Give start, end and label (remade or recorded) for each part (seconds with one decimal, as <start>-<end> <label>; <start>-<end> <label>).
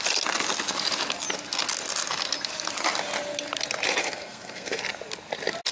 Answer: 0.0-4.0 recorded; 4.0-4.8 remade; 4.8-5.7 recorded